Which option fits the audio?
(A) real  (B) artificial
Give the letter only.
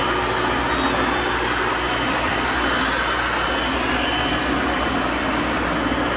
A